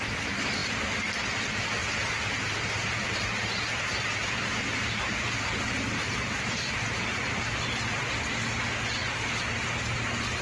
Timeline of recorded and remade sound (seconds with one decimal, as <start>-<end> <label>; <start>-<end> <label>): 0.0-1.8 recorded; 1.8-7.0 remade; 7.0-10.4 recorded